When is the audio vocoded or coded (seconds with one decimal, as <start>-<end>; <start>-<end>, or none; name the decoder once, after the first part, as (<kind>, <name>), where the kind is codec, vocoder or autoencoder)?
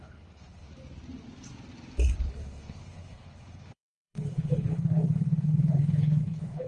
0.0-0.7 (codec, HILCodec); 2.3-6.7